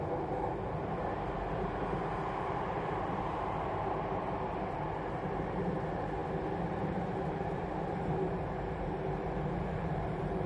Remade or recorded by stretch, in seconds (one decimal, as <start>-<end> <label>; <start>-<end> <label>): 0.0-10.5 remade